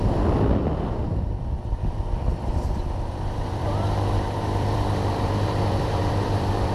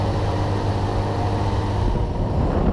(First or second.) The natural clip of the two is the second